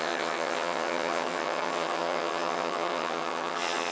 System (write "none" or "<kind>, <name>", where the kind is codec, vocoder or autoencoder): vocoder, HiFi-GAN